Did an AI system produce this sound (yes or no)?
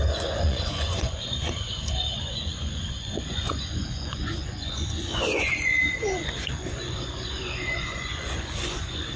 yes